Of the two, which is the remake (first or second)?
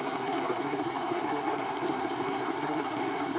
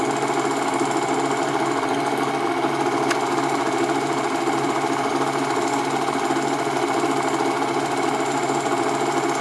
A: first